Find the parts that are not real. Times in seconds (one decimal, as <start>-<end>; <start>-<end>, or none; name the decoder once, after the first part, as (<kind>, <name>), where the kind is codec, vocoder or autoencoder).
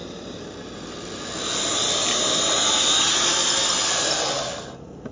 none